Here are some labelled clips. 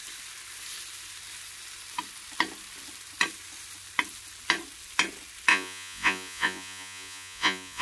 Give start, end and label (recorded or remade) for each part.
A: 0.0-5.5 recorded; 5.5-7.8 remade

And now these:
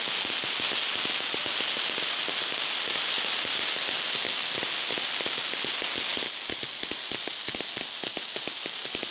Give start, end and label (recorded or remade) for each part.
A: 0.0-9.1 recorded

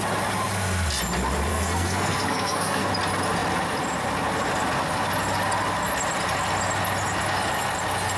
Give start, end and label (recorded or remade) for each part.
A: 0.0-1.5 recorded; 1.5-2.9 remade; 2.9-8.2 recorded

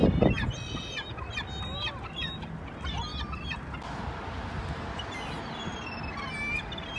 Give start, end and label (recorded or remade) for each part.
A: 0.0-7.0 recorded

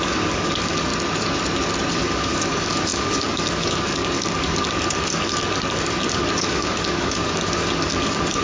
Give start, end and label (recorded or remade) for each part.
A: 0.0-0.9 remade; 0.9-1.9 recorded; 1.9-8.4 remade